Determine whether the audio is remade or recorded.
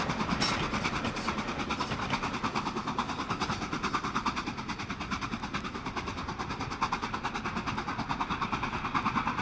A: recorded